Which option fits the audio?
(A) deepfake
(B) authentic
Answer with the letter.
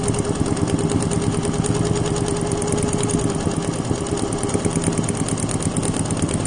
B